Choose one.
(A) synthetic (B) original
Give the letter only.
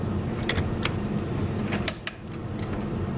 B